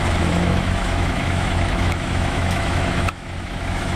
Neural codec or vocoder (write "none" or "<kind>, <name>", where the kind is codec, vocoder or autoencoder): autoencoder, DAC-VAE